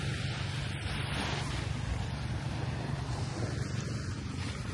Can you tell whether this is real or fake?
real